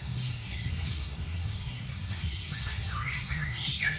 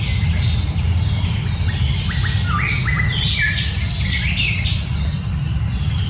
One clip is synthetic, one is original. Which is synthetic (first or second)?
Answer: first